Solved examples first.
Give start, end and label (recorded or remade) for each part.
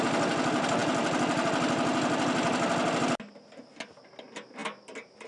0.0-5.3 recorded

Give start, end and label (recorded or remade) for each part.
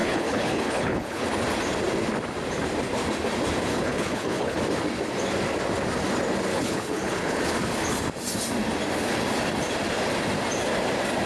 0.0-1.2 remade; 1.2-3.7 recorded; 3.7-4.6 remade; 4.6-6.5 recorded; 6.5-7.4 remade; 7.4-11.3 recorded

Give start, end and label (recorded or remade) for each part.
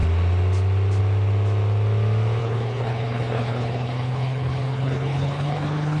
0.0-2.4 recorded; 2.4-6.0 remade